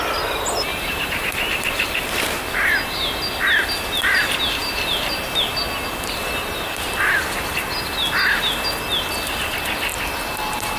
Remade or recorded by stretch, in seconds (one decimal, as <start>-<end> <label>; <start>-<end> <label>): 0.0-0.7 recorded; 0.7-2.4 remade; 2.4-4.6 recorded; 4.6-5.5 remade; 5.5-10.8 recorded